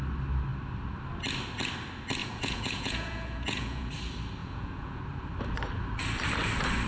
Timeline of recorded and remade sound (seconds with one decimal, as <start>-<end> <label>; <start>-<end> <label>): 0.0-2.2 recorded; 2.2-3.9 remade; 3.9-4.4 recorded; 4.4-5.0 remade; 5.0-6.9 recorded